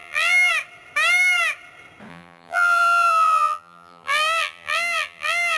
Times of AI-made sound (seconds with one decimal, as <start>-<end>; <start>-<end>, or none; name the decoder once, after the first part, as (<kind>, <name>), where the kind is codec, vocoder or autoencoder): 0.0-0.5 (vocoder, BigVGAN v2); 2.1-5.6